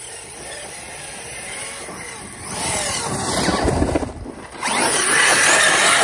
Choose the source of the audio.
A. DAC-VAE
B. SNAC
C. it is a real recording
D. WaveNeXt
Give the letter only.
C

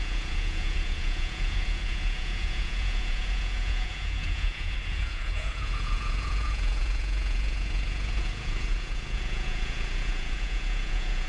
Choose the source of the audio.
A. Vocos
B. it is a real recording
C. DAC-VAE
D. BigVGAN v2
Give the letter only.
A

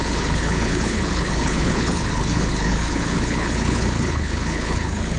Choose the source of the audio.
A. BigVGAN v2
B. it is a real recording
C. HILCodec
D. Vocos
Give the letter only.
C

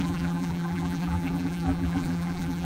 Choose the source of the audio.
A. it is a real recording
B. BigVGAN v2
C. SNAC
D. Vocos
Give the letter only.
B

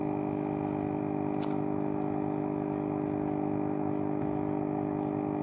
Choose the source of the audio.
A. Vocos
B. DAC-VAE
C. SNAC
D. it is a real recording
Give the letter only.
D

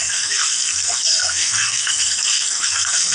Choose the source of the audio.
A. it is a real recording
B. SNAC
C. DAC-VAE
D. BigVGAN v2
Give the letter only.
B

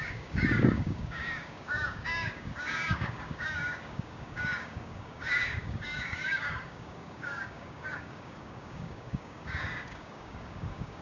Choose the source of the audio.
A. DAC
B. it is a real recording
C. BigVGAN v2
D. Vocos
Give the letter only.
A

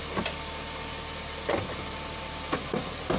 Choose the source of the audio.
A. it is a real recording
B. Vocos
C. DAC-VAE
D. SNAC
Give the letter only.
A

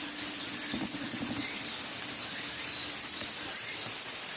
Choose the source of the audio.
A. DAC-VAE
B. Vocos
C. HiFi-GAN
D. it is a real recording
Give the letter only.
D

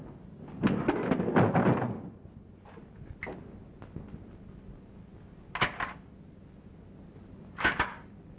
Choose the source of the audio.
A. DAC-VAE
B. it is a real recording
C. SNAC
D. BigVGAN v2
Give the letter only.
B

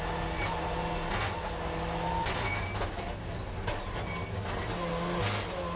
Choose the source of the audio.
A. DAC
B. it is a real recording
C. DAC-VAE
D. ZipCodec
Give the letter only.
B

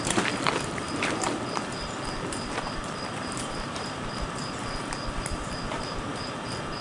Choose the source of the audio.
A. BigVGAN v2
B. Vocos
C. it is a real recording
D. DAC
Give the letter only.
A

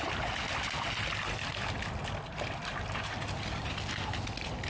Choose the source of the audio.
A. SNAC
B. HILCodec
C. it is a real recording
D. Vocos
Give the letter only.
C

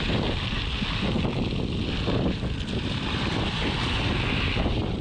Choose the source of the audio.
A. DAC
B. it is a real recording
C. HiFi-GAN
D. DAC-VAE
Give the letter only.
B